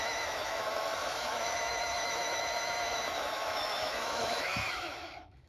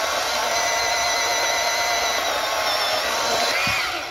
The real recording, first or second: second